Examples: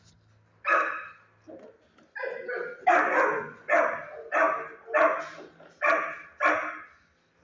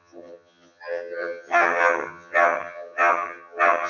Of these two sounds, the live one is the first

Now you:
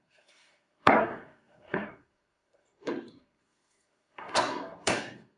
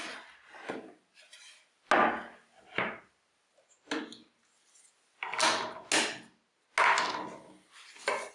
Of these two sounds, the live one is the second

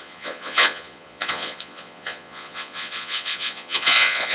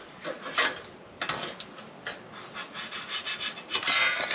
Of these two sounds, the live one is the second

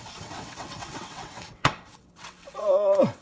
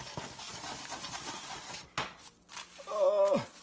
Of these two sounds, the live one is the second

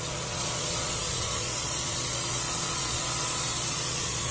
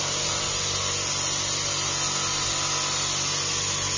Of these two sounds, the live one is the second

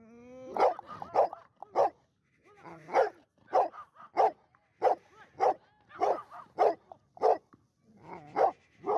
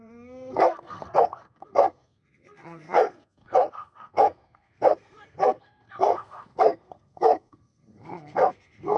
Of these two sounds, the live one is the first